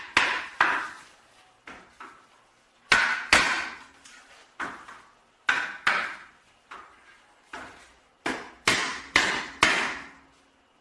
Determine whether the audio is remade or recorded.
recorded